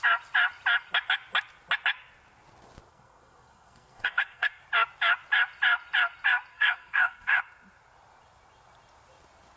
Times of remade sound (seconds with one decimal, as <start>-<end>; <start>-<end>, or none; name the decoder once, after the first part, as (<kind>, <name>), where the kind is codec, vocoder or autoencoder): 2.9-4.6 (codec, SNAC); 6.5-7.4